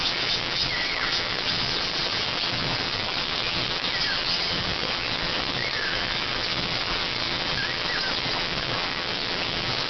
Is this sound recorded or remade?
remade